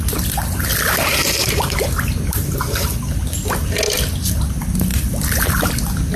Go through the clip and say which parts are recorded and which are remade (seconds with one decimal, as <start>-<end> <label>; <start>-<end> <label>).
0.0-0.4 recorded; 0.4-2.6 remade; 2.6-4.9 recorded; 4.9-5.7 remade; 5.7-6.2 recorded